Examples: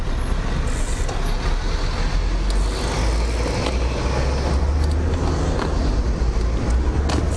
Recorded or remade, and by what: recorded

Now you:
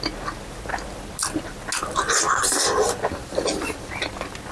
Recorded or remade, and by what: recorded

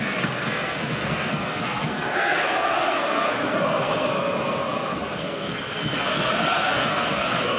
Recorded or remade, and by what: remade, codec, SNAC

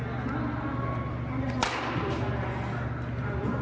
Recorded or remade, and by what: recorded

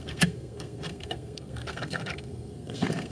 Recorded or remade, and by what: remade, codec, SNAC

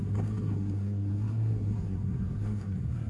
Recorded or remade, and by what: remade, codec, SNAC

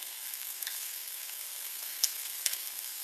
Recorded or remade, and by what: remade, codec, SNAC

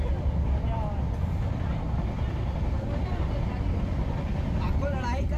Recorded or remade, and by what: recorded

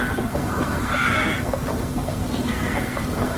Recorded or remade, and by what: remade, codec, SNAC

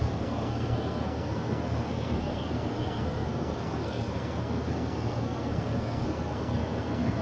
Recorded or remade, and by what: remade, codec, SNAC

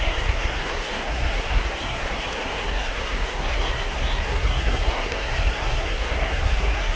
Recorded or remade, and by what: remade, codec, SNAC